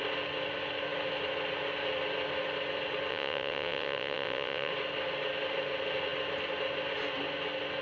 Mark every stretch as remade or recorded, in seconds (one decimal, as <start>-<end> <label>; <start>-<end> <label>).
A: 0.0-3.1 recorded; 3.1-4.7 remade; 4.7-7.8 recorded